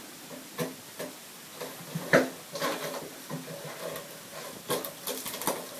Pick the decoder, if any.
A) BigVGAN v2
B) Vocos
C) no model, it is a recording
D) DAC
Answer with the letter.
C